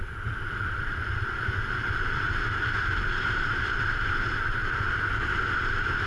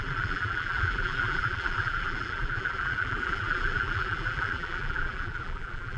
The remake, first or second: second